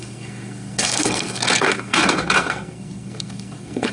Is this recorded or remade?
remade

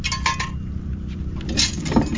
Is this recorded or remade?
recorded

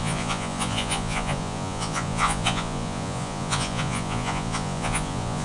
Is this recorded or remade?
remade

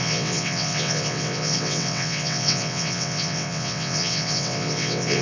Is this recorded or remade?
remade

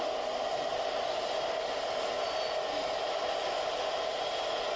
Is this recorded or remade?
recorded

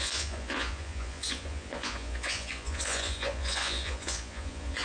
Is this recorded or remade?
remade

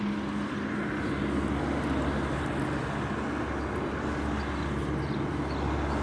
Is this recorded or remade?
recorded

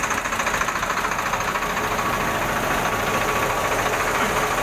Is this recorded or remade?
recorded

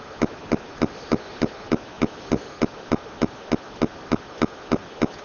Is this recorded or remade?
recorded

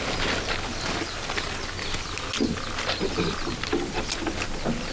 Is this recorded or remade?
recorded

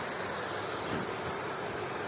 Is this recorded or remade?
remade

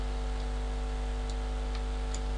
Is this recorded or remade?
recorded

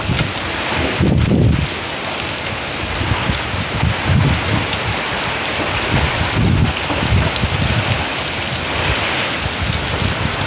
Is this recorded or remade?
recorded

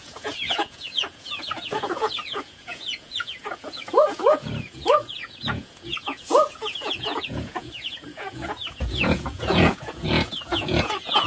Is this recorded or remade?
remade